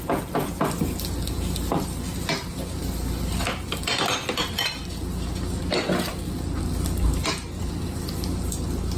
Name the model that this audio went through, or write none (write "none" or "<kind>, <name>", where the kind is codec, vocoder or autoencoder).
none